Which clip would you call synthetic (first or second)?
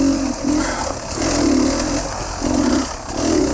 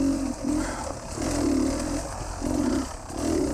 second